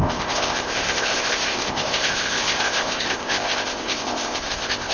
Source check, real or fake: fake